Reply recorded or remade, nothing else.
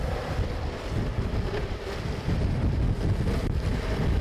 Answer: recorded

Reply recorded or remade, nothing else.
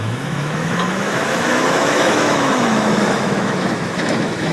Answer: remade